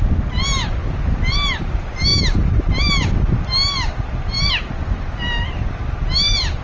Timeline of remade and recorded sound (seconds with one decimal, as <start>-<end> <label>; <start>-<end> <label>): 0.0-6.6 recorded